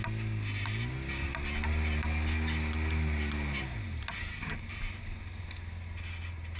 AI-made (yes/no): no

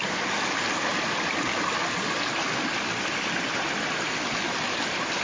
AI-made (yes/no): no